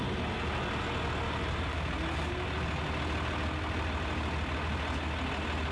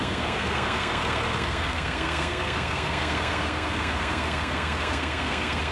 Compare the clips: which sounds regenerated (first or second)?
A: second